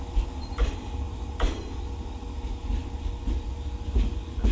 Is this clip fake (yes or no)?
no